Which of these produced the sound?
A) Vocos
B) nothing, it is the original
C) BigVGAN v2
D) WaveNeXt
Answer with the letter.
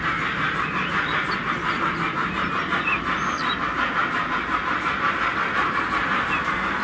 B